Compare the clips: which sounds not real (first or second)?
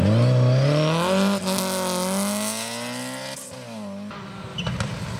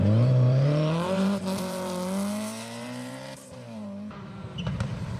second